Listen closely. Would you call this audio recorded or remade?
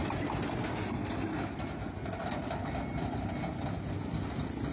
recorded